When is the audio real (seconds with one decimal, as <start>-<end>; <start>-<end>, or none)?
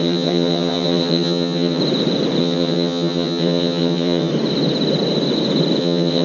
1.8-2.4; 4.3-5.8